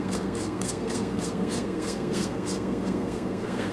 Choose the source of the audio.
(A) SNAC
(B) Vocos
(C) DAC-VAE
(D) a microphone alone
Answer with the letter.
A